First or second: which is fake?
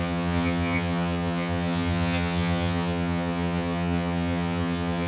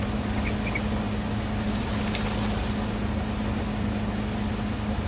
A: first